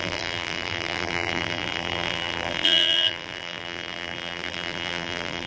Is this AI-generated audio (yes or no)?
yes